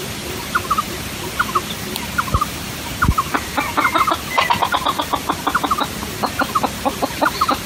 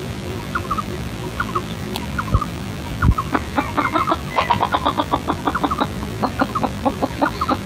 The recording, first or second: first